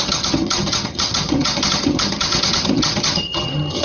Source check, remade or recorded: remade